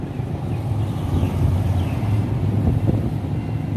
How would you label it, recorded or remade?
recorded